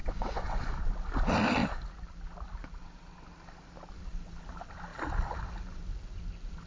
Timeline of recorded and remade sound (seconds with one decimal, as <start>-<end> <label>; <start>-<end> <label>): 0.0-0.6 remade; 0.6-6.7 recorded